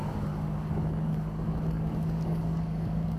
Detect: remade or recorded remade